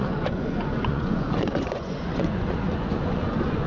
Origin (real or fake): fake